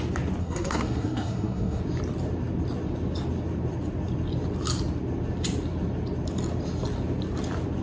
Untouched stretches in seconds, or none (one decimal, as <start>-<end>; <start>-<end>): 0.0-0.4; 1.8-7.8